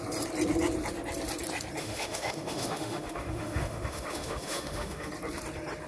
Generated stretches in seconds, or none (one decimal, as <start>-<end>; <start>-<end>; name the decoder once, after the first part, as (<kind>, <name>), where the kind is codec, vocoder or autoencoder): 1.8-5.1 (autoencoder, DAC-VAE)

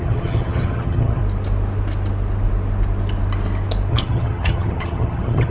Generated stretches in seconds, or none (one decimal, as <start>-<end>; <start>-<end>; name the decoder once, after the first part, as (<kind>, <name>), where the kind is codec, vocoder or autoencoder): 0.0-1.2 (vocoder, HiFi-GAN); 3.9-5.5

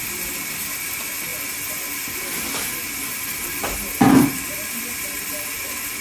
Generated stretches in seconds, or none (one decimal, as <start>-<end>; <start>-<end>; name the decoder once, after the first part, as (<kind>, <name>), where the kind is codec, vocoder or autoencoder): none

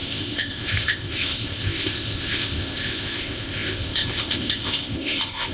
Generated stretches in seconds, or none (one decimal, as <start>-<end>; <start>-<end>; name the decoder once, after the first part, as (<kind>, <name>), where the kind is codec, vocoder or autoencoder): 0.0-5.5 (codec, ZipCodec)